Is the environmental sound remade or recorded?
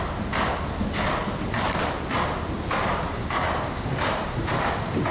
recorded